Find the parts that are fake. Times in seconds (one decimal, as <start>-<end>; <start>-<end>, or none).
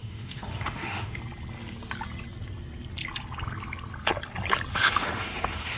0.0-1.2; 4.7-5.8